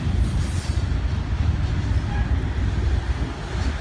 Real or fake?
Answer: real